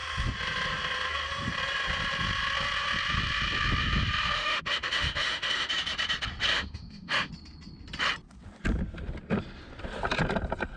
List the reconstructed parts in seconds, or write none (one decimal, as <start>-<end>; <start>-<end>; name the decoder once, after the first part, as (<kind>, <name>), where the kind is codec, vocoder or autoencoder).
4.4-5.7 (autoencoder, DAC-VAE); 6.5-7.3